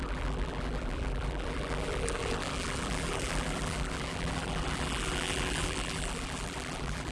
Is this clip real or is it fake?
fake